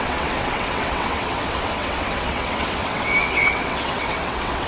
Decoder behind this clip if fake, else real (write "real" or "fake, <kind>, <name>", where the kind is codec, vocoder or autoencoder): fake, vocoder, WaveNeXt